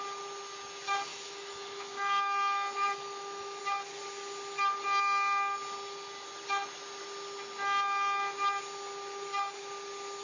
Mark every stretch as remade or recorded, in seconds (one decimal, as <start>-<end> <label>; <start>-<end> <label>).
0.0-1.1 recorded; 1.1-3.6 remade; 3.6-10.2 recorded

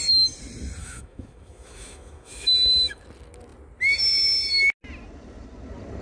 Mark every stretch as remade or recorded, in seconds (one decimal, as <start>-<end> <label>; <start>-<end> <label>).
0.0-0.8 recorded; 0.8-3.0 remade; 3.0-6.0 recorded

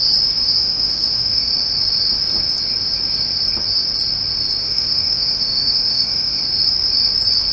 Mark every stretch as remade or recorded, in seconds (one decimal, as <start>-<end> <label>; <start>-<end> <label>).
0.0-0.6 recorded; 0.6-1.5 remade; 1.5-4.6 recorded; 4.6-6.4 remade; 6.4-7.5 recorded

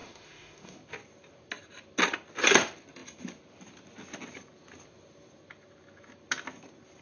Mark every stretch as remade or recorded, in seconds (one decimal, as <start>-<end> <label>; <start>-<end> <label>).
0.0-0.8 remade; 0.8-7.0 recorded

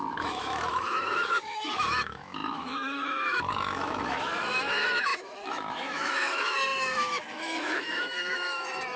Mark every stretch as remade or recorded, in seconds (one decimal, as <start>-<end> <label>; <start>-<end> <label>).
0.0-9.0 remade

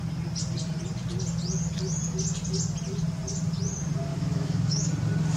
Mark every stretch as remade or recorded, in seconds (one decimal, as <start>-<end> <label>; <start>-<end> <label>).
0.0-4.1 recorded; 4.1-4.9 remade; 4.9-5.4 recorded